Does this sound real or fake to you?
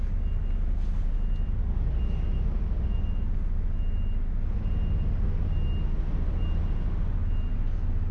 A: real